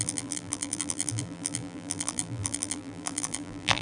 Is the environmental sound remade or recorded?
remade